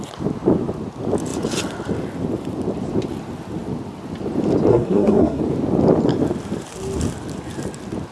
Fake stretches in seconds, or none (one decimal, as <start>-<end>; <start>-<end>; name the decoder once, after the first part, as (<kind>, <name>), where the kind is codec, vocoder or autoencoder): 4.7-5.4 (codec, SNAC)